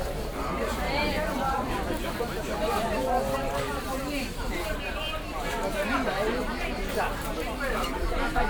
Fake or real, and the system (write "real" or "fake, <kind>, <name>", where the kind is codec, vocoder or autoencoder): fake, vocoder, BigVGAN v2